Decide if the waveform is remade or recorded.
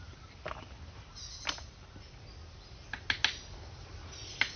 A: recorded